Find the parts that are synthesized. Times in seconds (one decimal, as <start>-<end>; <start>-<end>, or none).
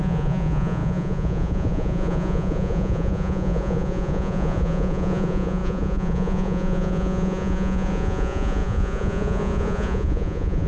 0.0-10.7